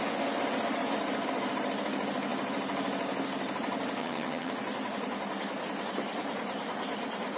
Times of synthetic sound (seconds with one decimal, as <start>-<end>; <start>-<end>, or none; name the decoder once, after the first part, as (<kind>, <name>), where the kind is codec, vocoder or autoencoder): 4.0-4.5 (vocoder, HiFi-GAN)